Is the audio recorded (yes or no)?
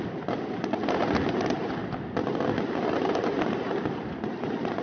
no